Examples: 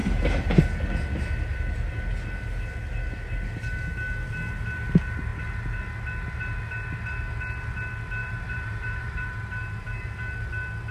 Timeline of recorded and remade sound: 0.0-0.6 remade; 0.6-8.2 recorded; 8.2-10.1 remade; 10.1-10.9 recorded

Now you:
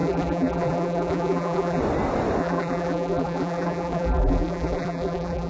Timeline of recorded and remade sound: 0.0-1.8 remade; 1.8-2.4 recorded; 2.4-5.5 remade

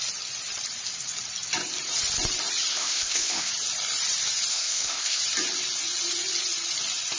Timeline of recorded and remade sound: 0.0-2.7 recorded; 2.7-3.5 remade; 3.5-4.5 recorded; 4.5-5.2 remade; 5.2-7.2 recorded